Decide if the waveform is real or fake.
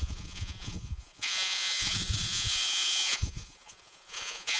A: fake